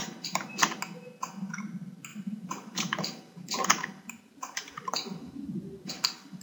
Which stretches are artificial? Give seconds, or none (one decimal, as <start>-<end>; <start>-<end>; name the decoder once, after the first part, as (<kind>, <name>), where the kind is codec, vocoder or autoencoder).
0.0-0.5 (vocoder, BigVGAN v2); 2.1-5.9

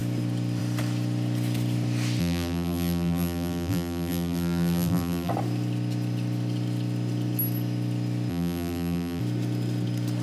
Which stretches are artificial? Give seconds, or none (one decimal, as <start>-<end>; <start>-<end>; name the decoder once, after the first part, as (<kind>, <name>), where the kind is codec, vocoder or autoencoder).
2.2-5.3 (vocoder, BigVGAN v2); 8.3-9.2

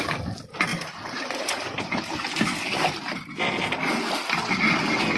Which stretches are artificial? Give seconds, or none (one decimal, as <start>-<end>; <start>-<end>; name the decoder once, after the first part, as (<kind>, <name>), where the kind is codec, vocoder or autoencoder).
0.7-2.6 (vocoder, BigVGAN v2)

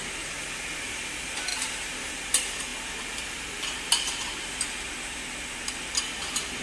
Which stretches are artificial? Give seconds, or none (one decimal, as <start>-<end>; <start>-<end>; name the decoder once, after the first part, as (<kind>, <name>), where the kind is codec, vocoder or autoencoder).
1.5-2.1 (vocoder, BigVGAN v2)

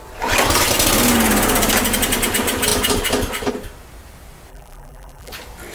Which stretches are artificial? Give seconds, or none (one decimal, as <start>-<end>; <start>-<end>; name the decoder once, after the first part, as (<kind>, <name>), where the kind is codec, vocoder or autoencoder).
4.5-5.3 (vocoder, BigVGAN v2)

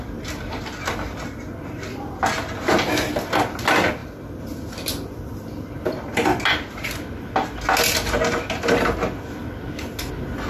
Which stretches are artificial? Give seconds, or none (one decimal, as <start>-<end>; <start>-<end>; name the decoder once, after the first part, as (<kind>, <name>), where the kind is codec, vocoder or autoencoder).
none

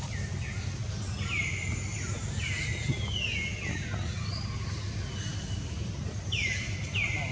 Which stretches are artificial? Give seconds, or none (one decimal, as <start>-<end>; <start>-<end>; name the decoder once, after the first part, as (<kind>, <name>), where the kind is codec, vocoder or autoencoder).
5.3-6.8 (vocoder, BigVGAN v2)